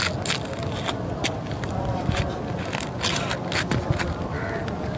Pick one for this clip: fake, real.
real